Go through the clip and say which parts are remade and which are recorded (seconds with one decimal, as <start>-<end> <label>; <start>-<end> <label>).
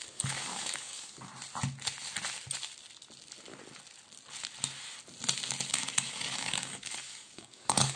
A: 0.0-1.3 remade; 1.3-5.7 recorded; 5.7-8.0 remade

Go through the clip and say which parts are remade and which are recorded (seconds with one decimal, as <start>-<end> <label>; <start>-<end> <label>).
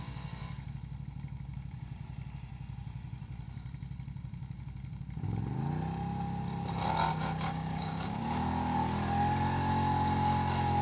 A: 0.0-7.1 recorded; 7.1-8.2 remade; 8.2-10.8 recorded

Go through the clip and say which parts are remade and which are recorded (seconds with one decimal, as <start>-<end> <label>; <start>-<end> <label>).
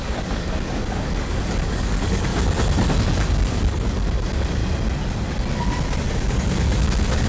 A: 0.0-2.3 remade; 2.3-3.0 recorded; 3.0-4.6 remade; 4.6-6.1 recorded; 6.1-7.3 remade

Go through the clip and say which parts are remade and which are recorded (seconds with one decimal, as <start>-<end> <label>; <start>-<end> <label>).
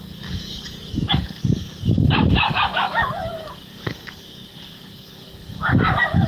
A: 0.0-6.3 remade